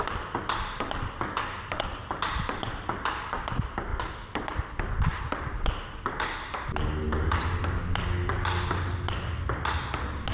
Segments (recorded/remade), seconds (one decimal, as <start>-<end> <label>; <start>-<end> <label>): 0.0-2.0 recorded; 2.0-2.8 remade; 2.8-10.3 recorded